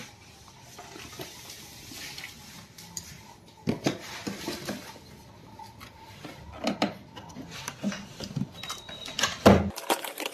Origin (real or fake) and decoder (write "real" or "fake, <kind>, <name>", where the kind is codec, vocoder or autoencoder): real